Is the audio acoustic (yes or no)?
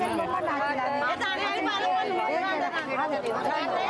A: yes